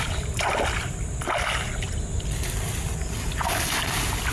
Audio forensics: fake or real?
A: real